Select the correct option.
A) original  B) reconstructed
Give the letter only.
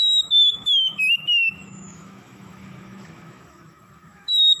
B